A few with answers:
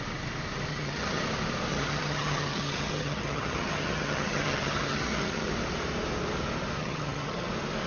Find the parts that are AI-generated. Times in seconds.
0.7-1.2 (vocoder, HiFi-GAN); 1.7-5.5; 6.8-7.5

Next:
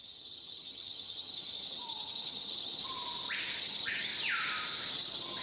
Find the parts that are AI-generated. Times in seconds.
0.0-2.8 (vocoder, HiFi-GAN); 3.6-4.1; 4.9-5.4

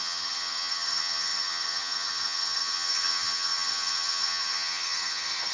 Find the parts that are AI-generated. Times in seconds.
0.0-5.5 (vocoder, HiFi-GAN)

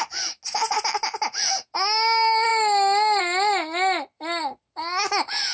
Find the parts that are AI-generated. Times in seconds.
none

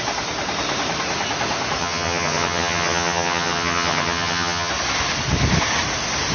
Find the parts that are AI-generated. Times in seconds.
1.8-4.7 (vocoder, HiFi-GAN)

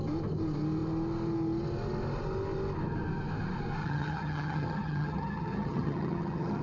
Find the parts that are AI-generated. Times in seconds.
3.8-6.6 (vocoder, HiFi-GAN)